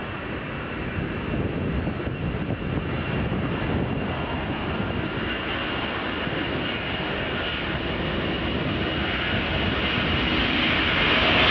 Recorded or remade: recorded